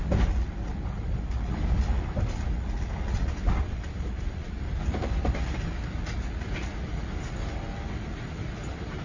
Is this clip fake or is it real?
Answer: real